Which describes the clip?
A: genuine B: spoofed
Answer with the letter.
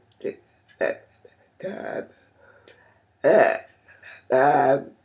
A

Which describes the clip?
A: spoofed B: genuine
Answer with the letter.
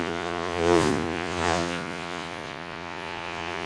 A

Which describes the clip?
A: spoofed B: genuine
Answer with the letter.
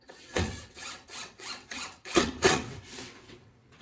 A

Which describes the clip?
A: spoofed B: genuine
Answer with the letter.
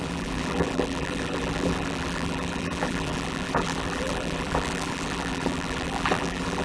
A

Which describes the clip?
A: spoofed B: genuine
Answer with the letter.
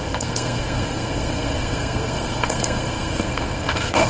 A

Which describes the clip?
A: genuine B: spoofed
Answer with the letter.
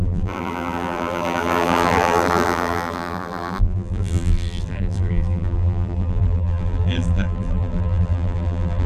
B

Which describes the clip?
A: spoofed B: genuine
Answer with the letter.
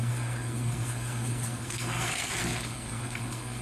A